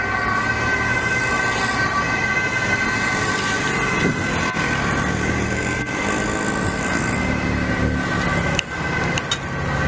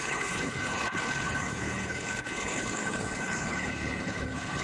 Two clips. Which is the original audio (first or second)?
first